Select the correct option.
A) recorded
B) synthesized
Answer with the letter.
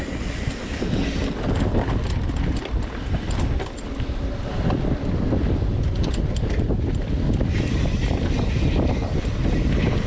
A